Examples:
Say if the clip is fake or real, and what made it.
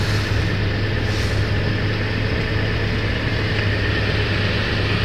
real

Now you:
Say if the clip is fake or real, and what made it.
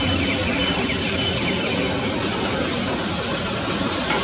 real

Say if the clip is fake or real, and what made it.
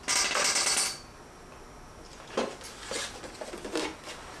real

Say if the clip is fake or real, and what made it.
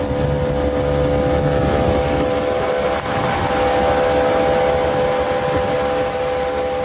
real